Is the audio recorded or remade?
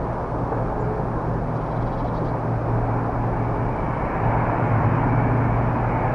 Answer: recorded